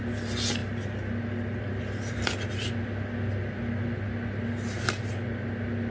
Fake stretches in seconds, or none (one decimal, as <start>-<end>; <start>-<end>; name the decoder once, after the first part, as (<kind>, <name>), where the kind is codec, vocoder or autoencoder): none